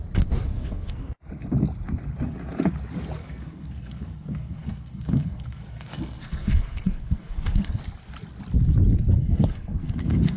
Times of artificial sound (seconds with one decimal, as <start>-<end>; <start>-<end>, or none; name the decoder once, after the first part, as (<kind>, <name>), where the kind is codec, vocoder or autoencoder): 0.5-1.3 (codec, SNAC); 3.2-7.8; 9.2-10.4